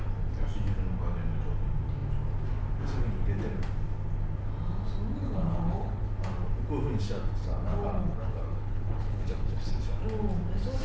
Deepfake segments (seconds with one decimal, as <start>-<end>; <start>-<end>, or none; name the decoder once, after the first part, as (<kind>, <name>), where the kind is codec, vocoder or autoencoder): 5.2-6.1 (codec, HILCodec); 7.4-9.8